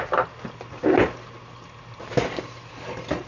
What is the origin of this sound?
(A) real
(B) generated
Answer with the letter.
A